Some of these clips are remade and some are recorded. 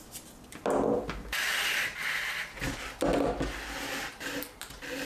recorded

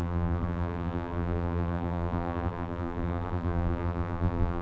remade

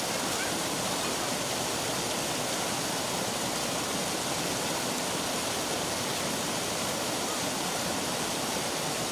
recorded